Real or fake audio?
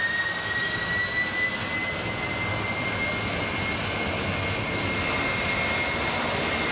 real